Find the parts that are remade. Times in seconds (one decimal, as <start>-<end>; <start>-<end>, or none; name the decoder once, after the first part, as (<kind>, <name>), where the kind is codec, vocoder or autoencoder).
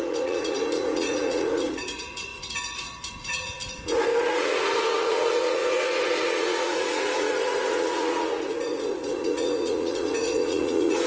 0.0-11.1 (vocoder, Vocos)